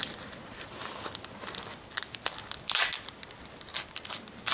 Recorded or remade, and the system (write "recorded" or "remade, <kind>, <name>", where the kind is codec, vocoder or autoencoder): recorded